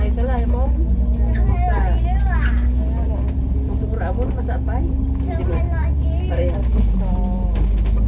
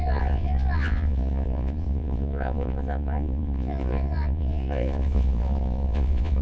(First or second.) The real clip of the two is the first